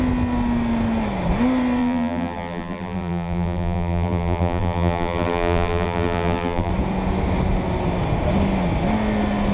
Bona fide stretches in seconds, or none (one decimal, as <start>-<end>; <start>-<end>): 0.0-1.8; 6.7-9.5